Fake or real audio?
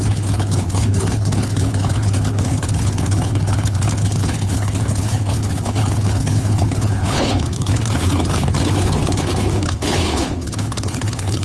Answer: fake